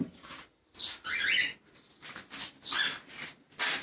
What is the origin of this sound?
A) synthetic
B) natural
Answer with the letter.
B